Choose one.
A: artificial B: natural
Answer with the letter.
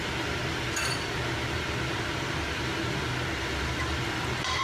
B